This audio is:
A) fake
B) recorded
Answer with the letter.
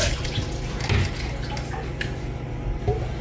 B